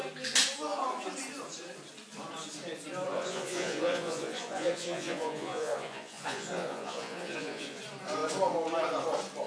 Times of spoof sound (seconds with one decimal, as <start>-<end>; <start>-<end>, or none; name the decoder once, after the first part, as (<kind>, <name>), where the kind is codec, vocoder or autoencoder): 3.1-7.8 (vocoder, Vocos)